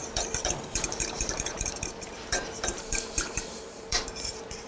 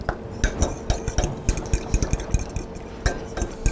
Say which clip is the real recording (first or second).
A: second